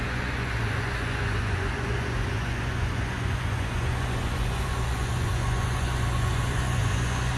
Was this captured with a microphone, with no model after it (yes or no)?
no